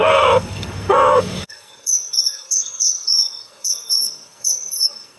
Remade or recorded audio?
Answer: remade